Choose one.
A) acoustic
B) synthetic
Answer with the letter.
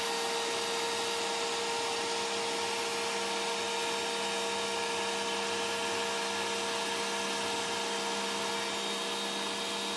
A